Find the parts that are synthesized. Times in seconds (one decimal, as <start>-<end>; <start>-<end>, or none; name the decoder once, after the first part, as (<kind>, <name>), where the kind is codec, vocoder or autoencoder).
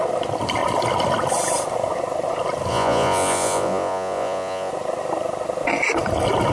2.7-4.7 (vocoder, Vocos)